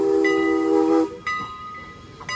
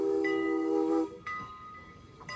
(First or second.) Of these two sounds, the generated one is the second